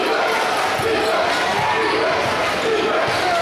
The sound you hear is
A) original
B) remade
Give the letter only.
A